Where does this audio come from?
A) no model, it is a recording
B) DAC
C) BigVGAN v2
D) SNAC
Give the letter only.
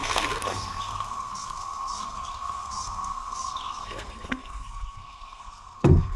D